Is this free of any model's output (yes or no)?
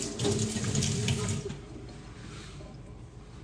yes